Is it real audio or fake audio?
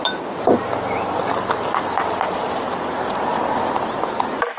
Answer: real